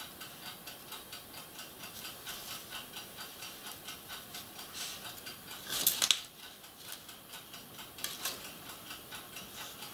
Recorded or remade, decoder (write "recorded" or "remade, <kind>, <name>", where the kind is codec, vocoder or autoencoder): recorded